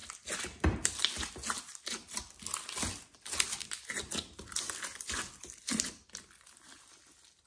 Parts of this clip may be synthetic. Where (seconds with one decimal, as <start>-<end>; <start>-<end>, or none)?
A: none

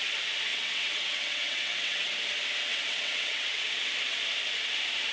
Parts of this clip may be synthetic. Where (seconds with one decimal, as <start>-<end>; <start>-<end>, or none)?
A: 0.5-2.1; 2.7-3.7